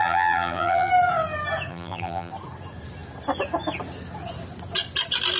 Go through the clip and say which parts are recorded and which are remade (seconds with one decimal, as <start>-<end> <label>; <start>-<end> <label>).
0.0-0.9 remade; 0.9-1.7 recorded; 1.7-2.3 remade; 2.3-5.4 recorded